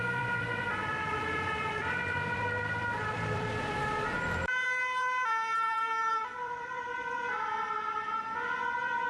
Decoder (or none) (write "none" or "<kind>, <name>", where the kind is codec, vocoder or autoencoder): vocoder, BigVGAN v2